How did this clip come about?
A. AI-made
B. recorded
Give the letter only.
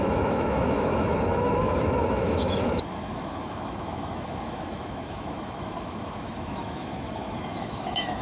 A